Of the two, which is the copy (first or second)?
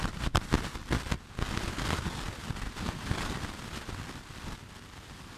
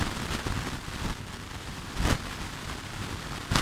second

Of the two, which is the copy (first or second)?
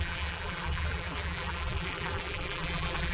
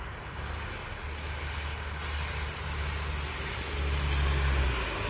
first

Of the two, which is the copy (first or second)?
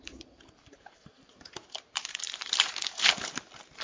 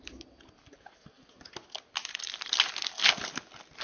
first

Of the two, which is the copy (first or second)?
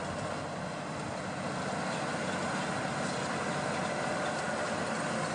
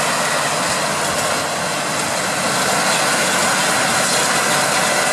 first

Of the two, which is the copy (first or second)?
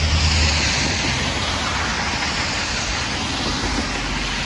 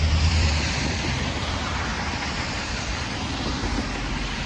second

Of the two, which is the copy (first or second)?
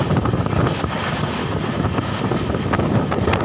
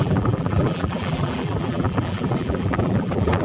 second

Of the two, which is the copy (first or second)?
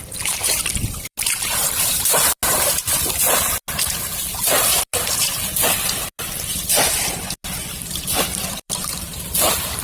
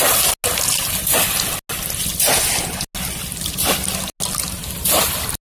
first